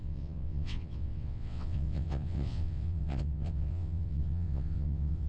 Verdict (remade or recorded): remade